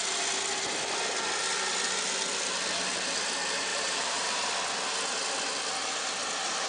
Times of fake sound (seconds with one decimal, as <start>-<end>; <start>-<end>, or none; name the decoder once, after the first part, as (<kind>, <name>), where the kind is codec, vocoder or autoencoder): 3.7-4.5 (vocoder, BigVGAN v2)